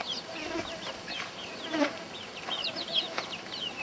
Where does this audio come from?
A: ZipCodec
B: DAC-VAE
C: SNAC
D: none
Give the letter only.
D